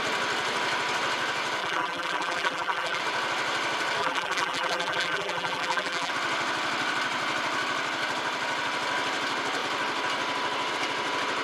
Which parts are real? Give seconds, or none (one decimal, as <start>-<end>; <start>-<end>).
0.0-1.6; 3.0-4.0; 6.1-11.4